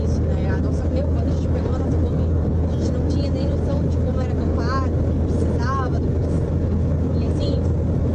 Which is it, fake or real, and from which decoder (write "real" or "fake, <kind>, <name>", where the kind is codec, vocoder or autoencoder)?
real